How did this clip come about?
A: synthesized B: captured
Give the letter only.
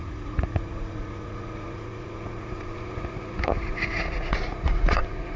A